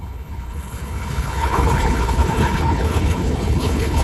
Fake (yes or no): yes